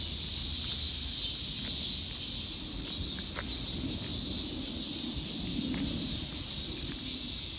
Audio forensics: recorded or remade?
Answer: recorded